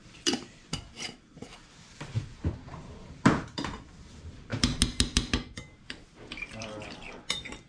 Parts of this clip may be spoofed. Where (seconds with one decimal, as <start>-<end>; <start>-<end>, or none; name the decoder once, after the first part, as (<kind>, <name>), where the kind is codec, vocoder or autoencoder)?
0.0-4.5 (vocoder, BigVGAN v2); 5.5-7.7

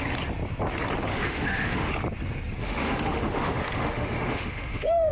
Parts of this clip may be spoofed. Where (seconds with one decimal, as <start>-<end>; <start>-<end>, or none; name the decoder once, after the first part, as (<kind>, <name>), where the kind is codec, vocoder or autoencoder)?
1.1-1.9 (autoencoder, DAC-VAE); 2.6-5.1

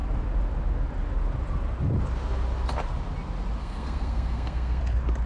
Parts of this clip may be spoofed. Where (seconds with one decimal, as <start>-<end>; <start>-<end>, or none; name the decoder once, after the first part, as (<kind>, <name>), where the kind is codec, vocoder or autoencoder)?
3.6-4.8 (codec, SNAC)

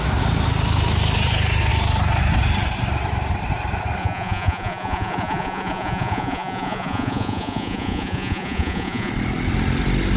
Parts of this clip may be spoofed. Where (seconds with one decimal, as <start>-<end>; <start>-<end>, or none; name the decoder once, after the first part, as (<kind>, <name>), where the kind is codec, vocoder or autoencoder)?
4.0-9.1 (vocoder, Vocos)

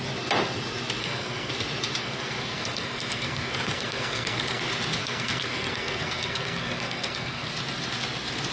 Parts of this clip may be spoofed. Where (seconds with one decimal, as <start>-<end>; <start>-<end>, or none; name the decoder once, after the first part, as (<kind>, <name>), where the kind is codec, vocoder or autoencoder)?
1.0-1.5 (codec, SNAC); 2.0-4.6; 5.0-7.5

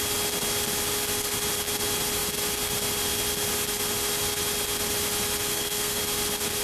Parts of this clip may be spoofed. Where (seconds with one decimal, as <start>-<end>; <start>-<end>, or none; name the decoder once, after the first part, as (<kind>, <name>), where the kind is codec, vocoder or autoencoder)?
5.5-6.0 (codec, SNAC)